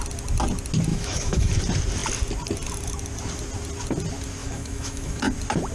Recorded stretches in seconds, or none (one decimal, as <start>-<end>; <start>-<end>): 0.0-0.9; 1.5-4.4; 5.2-5.7

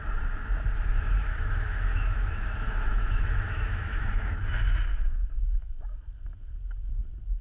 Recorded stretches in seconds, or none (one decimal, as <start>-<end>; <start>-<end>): 0.0-0.9; 4.3-4.9; 5.7-7.4

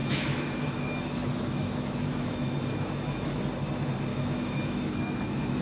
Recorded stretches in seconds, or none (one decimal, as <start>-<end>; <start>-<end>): 3.4-4.1

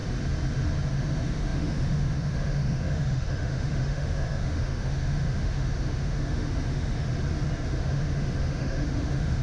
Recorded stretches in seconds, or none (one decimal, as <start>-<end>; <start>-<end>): 0.0-0.9; 7.1-7.8

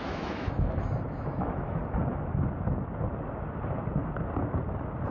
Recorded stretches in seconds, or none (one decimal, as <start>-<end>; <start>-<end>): 1.8-5.1

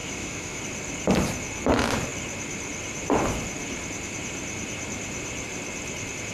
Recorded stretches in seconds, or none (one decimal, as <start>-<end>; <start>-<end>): 0.6-6.3

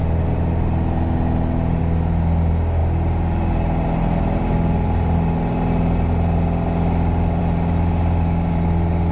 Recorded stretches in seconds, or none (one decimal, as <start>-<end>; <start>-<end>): 0.0-9.1